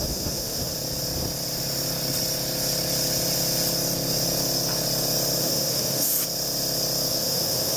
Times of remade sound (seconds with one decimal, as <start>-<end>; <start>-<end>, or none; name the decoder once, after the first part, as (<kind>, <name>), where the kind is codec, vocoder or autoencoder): 0.0-0.7 (autoencoder, DAC-VAE); 5.4-6.1; 7.1-7.8